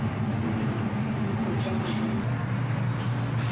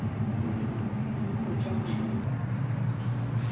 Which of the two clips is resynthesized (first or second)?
second